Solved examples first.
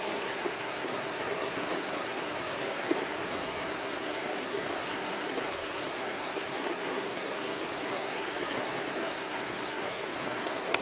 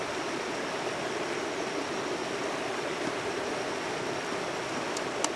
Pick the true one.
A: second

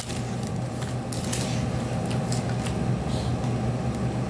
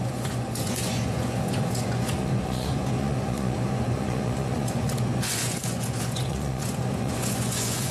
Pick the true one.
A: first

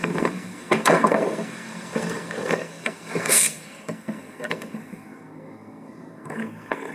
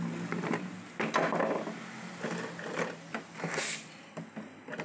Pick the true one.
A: second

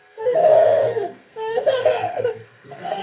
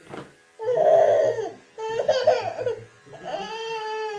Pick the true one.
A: second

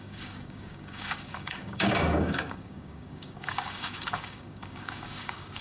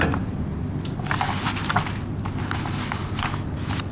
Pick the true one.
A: second